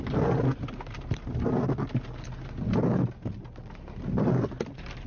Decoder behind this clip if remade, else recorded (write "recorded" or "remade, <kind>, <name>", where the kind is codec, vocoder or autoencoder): recorded